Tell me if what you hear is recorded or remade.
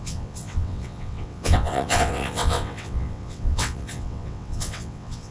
remade